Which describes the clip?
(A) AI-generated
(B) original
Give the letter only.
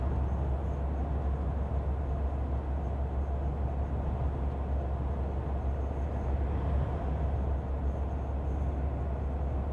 B